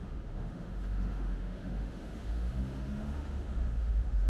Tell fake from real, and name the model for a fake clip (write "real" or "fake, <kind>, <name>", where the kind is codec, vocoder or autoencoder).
fake, autoencoder, DAC-VAE